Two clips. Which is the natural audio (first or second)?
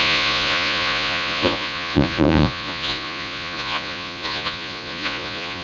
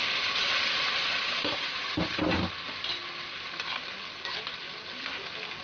second